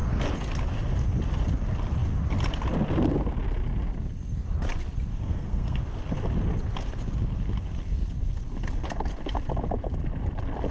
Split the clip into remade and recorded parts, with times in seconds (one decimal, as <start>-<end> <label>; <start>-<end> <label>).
0.0-5.1 recorded; 5.1-5.8 remade; 5.8-10.7 recorded